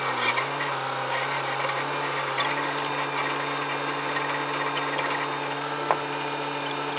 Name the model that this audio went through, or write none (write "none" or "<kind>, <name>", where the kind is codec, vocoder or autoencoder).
none